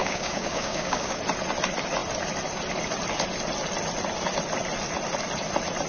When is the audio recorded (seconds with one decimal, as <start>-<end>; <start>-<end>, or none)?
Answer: 1.2-5.9